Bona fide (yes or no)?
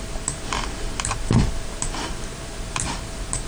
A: no